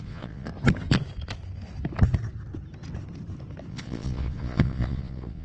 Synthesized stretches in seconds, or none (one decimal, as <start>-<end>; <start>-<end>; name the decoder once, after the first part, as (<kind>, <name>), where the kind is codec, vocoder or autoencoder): 0.0-0.5 (vocoder, Vocos); 3.7-5.4